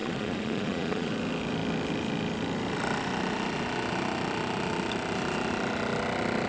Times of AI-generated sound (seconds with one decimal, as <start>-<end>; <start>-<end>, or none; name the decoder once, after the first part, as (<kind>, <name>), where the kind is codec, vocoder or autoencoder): 0.0-1.1 (vocoder, Vocos)